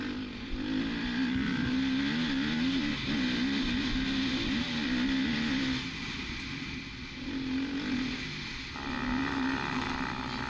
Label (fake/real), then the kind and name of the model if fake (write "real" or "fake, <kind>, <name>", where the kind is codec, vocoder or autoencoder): real